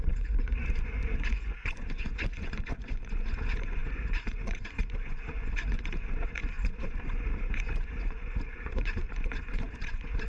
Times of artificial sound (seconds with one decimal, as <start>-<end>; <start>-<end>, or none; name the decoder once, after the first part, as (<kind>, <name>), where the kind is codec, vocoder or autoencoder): 0.0-10.3 (vocoder, Vocos)